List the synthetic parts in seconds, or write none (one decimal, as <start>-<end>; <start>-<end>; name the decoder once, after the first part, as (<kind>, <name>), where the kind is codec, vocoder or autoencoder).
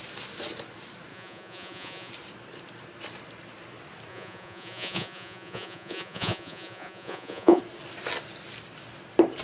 1.1-2.1 (vocoder, Vocos); 4.1-7.6